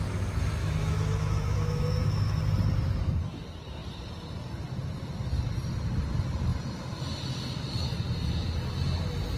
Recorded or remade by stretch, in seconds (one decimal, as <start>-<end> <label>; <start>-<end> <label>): 0.0-0.6 recorded; 0.6-2.4 remade; 2.4-9.4 recorded